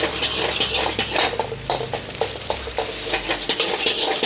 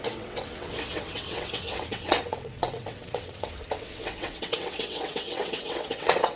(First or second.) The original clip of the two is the first